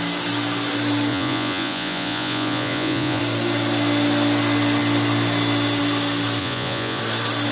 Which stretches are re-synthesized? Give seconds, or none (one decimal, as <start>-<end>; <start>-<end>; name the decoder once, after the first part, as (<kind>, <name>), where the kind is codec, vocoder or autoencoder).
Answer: 1.1-3.2 (vocoder, Vocos); 6.4-7.0